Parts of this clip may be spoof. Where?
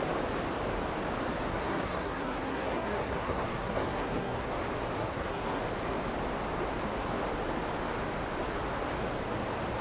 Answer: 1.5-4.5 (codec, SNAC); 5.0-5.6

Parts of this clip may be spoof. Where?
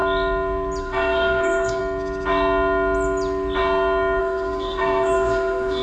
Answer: 0.8-1.8 (codec, SNAC); 4.2-5.8